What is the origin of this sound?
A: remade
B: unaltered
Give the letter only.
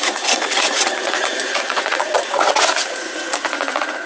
A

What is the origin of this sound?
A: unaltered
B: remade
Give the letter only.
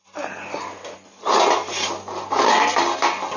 A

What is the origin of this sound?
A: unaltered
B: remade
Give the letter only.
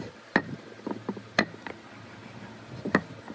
A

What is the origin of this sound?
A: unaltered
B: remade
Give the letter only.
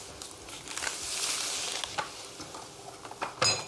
A